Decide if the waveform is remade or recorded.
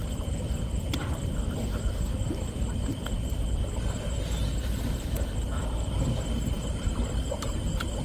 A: recorded